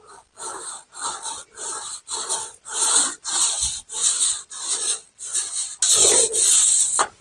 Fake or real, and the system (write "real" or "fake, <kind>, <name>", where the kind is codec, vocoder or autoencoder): real